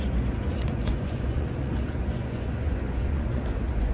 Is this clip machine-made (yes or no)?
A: yes